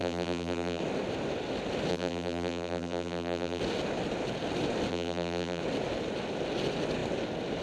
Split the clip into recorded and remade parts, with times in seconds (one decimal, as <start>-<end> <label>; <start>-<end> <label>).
0.0-0.8 remade; 0.8-1.9 recorded; 1.9-3.6 remade; 3.6-4.9 recorded; 4.9-5.6 remade; 5.6-7.6 recorded